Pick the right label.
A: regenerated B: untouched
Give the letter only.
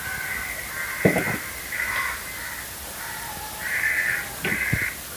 B